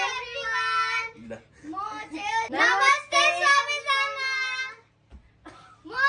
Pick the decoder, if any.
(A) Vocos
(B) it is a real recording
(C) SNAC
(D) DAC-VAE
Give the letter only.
B